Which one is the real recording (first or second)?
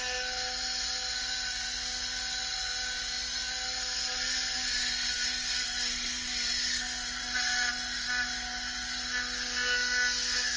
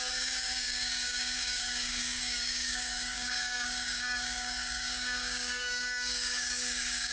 first